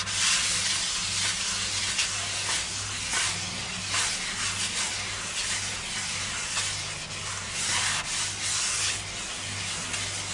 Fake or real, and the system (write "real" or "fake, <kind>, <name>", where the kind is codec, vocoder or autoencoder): real